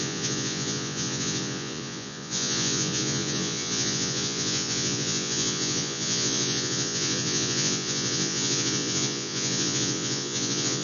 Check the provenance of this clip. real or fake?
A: fake